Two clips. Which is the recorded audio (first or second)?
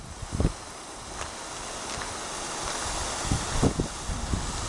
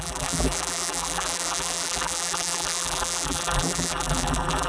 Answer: first